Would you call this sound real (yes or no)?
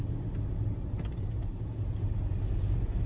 yes